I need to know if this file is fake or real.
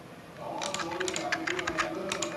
real